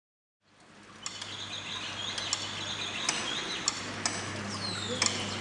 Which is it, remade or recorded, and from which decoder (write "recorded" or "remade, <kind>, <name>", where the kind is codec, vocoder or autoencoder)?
recorded